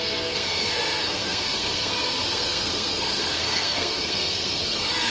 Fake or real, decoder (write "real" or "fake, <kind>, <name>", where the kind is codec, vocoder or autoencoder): fake, codec, SNAC